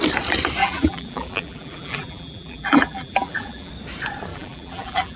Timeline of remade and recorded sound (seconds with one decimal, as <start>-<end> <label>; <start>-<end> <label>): 0.0-0.6 recorded; 0.6-3.7 remade; 3.7-4.3 recorded; 4.3-5.2 remade